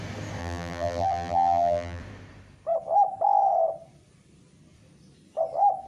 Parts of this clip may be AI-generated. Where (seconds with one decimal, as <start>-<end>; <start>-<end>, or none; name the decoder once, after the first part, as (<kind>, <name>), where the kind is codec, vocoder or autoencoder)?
0.4-2.0 (vocoder, BigVGAN v2)